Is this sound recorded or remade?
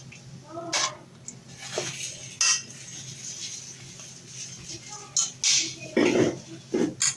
recorded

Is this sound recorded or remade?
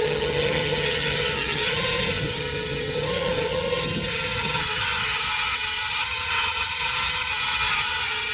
remade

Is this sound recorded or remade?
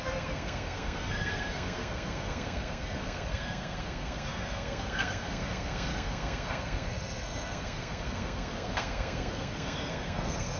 remade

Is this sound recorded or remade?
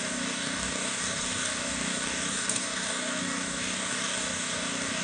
remade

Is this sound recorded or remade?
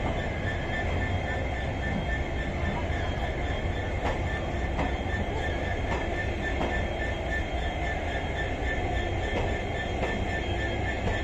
recorded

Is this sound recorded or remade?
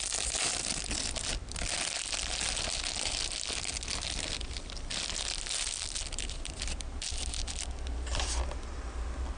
recorded